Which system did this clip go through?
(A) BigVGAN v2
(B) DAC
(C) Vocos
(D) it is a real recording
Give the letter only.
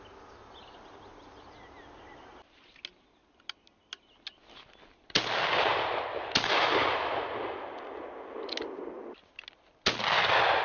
D